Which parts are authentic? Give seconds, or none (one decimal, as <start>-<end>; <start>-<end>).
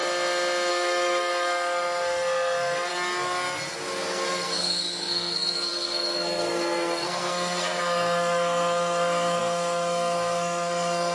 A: 0.0-0.7; 2.9-4.1